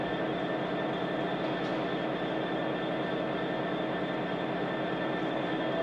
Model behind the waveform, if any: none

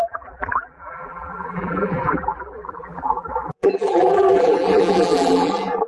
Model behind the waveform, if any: vocoder, BigVGAN v2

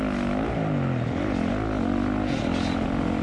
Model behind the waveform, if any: none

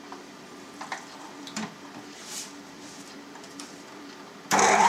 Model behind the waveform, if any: vocoder, BigVGAN v2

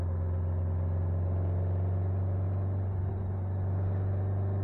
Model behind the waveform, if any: none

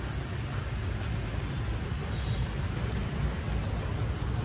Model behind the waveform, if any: none